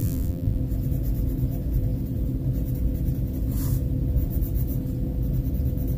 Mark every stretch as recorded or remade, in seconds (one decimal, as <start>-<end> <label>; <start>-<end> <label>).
0.0-0.6 remade; 0.6-6.0 recorded